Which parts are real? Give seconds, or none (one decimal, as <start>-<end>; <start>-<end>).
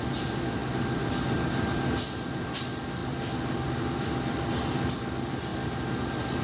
0.0-6.4